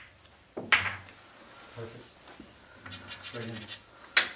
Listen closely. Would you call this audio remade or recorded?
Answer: recorded